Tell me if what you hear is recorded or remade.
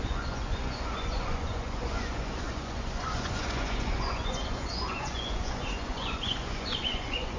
remade